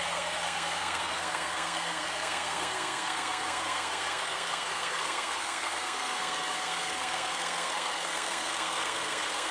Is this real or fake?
fake